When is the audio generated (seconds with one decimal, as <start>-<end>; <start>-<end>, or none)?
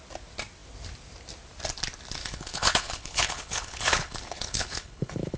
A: 2.2-5.4